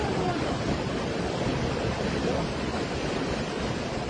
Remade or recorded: recorded